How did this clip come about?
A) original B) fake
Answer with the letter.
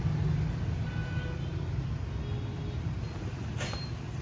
A